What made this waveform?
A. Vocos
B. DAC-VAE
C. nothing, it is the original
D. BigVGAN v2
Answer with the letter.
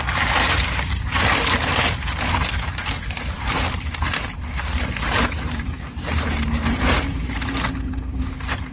D